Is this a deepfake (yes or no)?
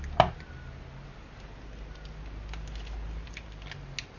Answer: no